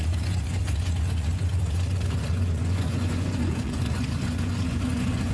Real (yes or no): no